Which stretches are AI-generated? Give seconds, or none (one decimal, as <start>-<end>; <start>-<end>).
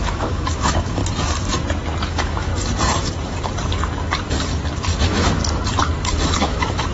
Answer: 0.0-1.0; 2.1-2.5; 5.0-5.4; 6.1-6.9